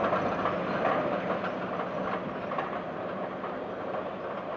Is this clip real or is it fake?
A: real